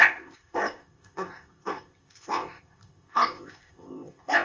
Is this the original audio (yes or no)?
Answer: no